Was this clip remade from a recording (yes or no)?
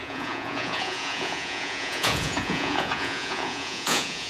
yes